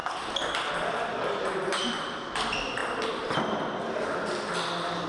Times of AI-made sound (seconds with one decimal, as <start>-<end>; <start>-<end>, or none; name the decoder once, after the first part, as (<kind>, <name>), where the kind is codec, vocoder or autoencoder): none